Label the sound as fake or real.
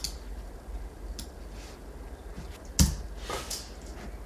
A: real